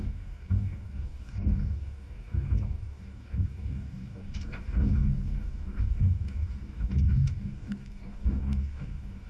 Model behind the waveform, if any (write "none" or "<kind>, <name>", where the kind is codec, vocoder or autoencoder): codec, DAC